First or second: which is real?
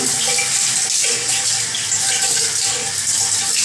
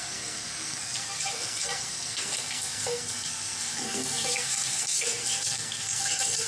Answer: first